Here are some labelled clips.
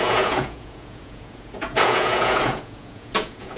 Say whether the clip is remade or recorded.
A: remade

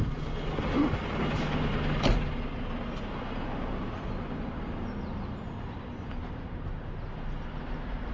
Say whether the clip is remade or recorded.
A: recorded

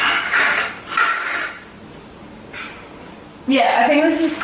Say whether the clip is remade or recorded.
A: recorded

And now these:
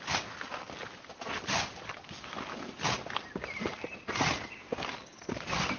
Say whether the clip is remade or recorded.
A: recorded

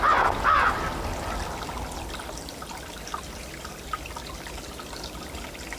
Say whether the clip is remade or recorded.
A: recorded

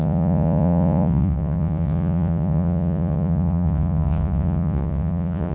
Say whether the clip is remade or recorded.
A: remade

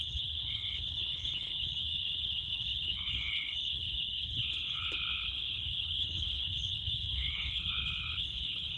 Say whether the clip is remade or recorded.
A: remade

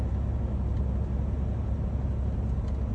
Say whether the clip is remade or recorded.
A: recorded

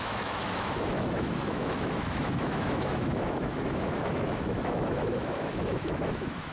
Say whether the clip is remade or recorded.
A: remade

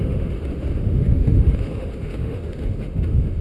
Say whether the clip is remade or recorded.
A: remade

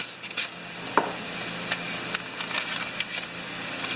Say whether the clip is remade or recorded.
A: recorded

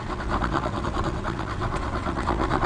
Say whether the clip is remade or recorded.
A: remade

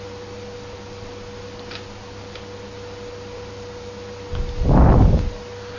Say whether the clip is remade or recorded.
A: recorded